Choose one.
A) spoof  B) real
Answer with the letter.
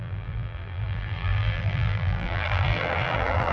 A